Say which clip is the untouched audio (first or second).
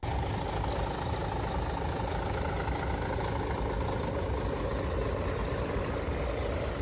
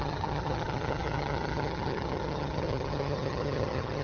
first